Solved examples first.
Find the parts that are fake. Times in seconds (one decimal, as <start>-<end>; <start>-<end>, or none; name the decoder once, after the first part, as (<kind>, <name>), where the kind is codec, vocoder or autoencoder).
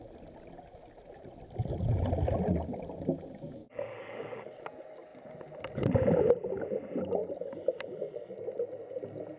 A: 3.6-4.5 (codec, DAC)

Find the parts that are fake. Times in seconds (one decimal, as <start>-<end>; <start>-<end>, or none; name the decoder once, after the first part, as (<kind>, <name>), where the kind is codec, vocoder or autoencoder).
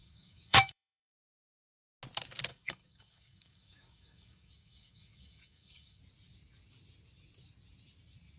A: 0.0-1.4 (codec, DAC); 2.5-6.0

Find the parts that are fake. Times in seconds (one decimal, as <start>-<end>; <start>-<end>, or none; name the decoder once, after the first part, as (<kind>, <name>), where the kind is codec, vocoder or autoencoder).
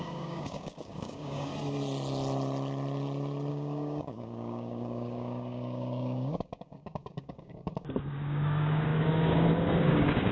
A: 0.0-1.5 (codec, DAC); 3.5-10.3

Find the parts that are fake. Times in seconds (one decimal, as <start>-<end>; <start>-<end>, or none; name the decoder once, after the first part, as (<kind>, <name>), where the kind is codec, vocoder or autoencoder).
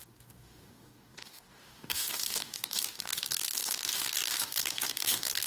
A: 0.0-5.5 (codec, DAC)